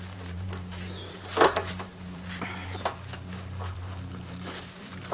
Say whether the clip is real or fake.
fake